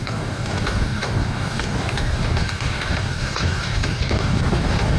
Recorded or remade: remade